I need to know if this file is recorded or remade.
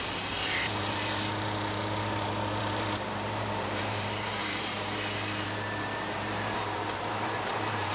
remade